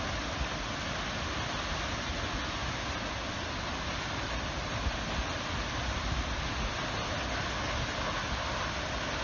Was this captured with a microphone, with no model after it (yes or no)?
yes